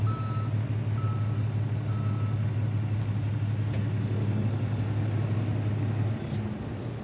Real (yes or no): yes